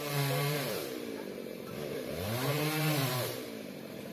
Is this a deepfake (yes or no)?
yes